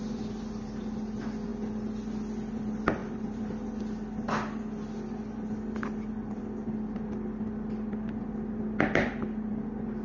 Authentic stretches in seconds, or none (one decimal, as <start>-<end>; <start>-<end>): 0.0-10.0